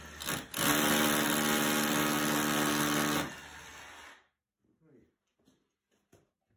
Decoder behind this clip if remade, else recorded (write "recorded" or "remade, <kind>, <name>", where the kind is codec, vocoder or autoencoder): recorded